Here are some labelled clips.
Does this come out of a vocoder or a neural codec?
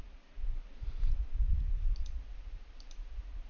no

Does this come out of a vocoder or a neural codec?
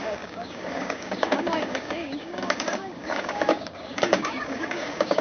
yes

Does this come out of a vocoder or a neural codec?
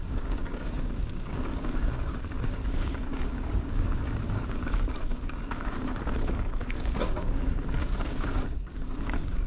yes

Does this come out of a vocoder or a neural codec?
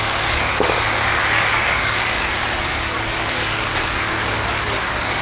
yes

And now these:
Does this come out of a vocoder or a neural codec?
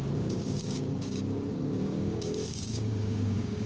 yes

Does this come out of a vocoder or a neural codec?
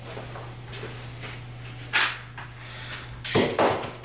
no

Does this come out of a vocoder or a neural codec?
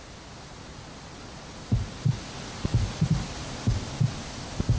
no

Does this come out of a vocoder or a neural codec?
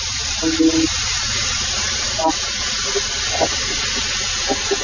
no